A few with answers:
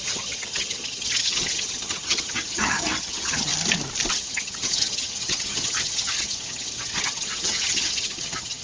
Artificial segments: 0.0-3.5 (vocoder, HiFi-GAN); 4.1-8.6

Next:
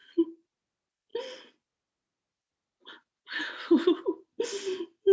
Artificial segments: 0.0-0.6 (vocoder, BigVGAN v2)

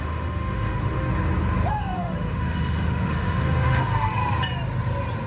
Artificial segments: 0.0-1.1 (autoencoder, DAC-VAE); 1.7-4.2

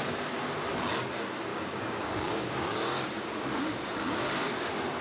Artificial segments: 1.5-4.5 (codec, DAC)

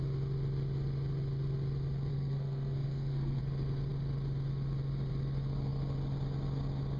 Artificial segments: 2.1-3.4 (codec, SNAC)

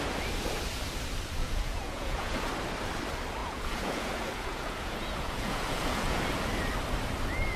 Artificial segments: 1.4-2.5 (vocoder, Vocos); 3.4-6.2

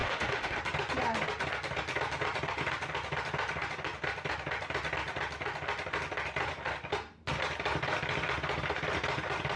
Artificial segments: 0.0-0.6 (autoencoder, DAC-VAE)

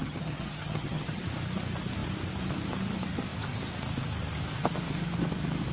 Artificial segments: 0.0-1.2 (vocoder, HiFi-GAN)